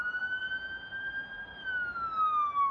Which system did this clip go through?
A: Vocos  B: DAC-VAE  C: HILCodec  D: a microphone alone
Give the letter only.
D